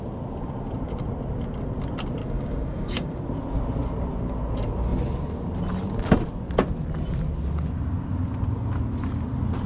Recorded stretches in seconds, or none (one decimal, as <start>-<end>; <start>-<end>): 0.0-2.2; 3.2-9.7